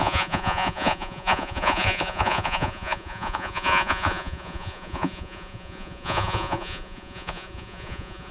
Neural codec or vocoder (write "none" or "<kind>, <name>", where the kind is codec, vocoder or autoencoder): vocoder, Vocos